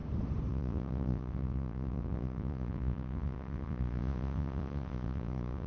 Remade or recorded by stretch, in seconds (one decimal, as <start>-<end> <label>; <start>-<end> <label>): 0.0-0.5 recorded; 0.5-5.7 remade